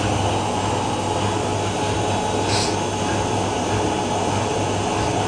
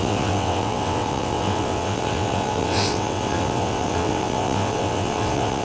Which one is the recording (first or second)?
first